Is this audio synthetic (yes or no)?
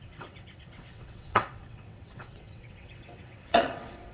yes